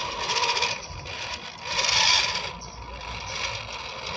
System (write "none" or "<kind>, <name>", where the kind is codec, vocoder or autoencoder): none